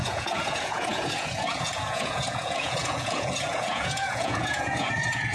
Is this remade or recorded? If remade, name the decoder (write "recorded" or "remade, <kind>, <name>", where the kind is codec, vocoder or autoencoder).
remade, vocoder, Vocos